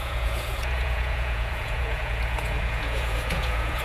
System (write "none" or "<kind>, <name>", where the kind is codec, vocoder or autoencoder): vocoder, Vocos